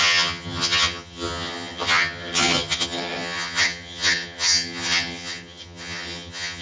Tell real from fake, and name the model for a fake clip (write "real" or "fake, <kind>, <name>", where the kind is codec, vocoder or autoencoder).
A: fake, vocoder, HiFi-GAN